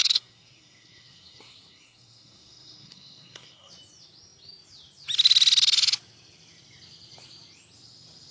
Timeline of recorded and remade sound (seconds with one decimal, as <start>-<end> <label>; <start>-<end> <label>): 0.0-3.7 remade; 3.7-8.3 recorded